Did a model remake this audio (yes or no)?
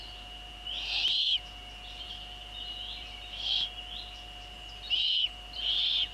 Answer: no